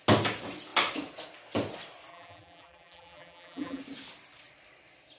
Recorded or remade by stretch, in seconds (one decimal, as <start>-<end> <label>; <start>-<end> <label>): 0.0-2.1 recorded; 2.1-3.8 remade; 3.8-5.2 recorded